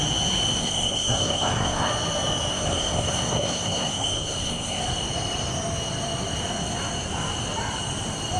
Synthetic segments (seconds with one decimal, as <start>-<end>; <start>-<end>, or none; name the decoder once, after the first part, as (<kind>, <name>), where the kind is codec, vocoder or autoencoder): 0.6-1.9 (codec, SNAC); 2.5-4.8